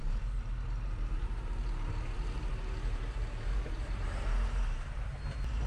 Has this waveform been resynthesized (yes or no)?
yes